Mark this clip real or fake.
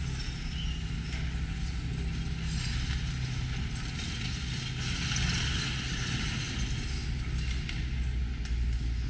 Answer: real